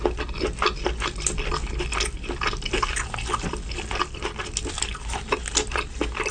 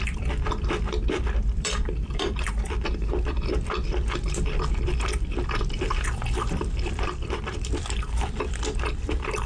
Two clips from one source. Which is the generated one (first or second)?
second